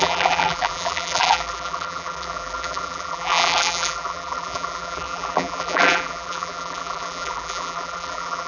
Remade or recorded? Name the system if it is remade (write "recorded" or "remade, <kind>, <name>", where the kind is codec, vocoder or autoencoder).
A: remade, vocoder, BigVGAN v2